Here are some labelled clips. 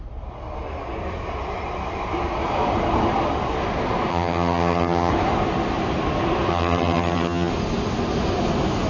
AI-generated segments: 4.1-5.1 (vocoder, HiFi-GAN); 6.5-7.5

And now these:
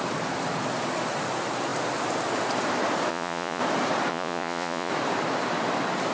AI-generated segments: 3.1-3.6 (vocoder, Vocos); 4.1-4.9

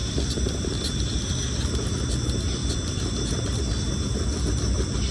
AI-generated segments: 0.0-1.3 (vocoder, BigVGAN v2); 2.6-3.6

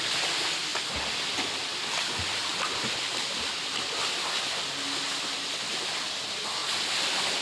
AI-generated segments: none